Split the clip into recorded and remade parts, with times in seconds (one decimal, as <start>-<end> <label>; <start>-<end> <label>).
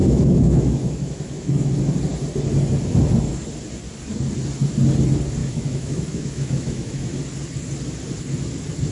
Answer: 0.0-1.7 remade; 1.7-5.4 recorded; 5.4-7.2 remade; 7.2-8.9 recorded